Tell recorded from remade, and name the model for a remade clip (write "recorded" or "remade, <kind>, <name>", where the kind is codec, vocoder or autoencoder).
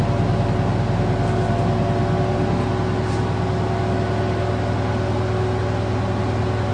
recorded